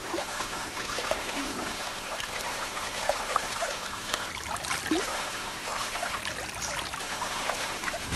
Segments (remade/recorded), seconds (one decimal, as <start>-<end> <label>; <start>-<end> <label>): 0.0-4.3 remade; 4.3-5.0 recorded; 5.0-6.2 remade; 6.2-7.0 recorded; 7.0-8.2 remade